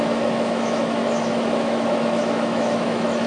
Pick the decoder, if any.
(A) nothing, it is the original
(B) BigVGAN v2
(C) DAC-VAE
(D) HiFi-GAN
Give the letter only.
C